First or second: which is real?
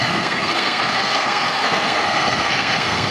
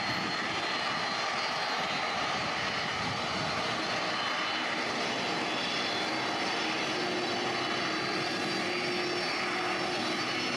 second